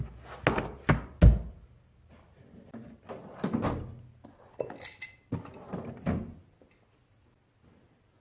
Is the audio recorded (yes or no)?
yes